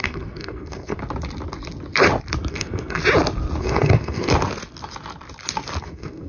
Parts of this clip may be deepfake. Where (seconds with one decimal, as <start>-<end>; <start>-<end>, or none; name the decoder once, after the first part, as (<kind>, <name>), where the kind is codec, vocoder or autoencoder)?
0.0-1.0 (codec, SNAC); 2.5-3.0; 3.6-4.3; 5.8-6.3